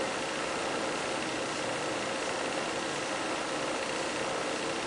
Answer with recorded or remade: recorded